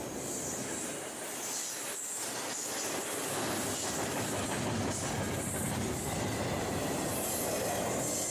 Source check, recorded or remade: recorded